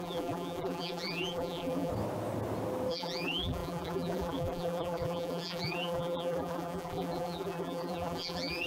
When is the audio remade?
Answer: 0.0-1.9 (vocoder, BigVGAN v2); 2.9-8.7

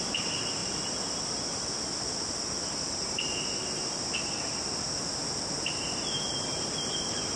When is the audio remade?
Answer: none

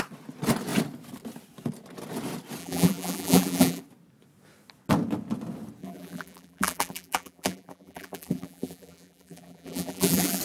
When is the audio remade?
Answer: 2.6-3.8 (vocoder, BigVGAN v2); 5.8-10.4

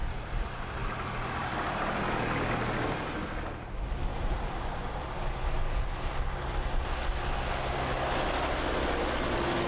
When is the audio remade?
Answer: 0.0-2.0 (vocoder, BigVGAN v2); 4.1-6.1